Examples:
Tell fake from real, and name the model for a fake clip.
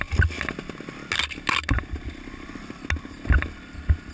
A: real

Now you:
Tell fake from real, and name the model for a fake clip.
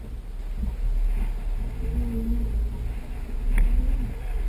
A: real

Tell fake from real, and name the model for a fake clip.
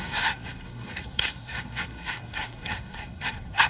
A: fake, codec, SNAC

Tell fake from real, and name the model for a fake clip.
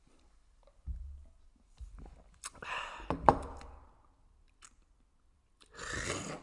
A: real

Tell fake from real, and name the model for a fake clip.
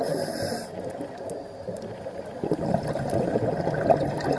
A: real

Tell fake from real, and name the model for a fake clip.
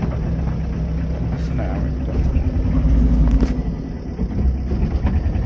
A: real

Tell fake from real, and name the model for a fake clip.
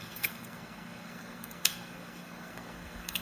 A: fake, codec, SNAC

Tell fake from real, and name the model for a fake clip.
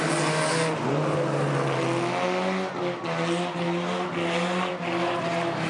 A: real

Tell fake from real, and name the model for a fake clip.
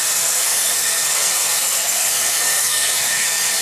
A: fake, codec, SNAC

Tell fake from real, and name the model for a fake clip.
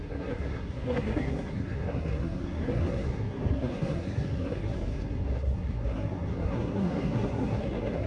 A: fake, codec, SNAC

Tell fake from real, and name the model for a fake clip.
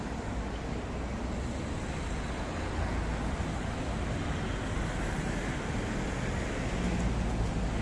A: real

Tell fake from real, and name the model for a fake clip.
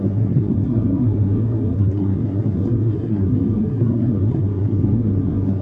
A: fake, codec, SNAC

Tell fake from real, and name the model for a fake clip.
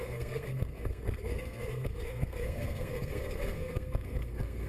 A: fake, codec, SNAC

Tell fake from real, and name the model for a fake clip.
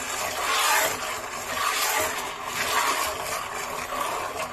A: real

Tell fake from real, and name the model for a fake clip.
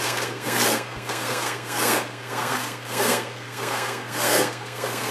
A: fake, codec, SNAC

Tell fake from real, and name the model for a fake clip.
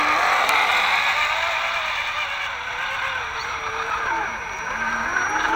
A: real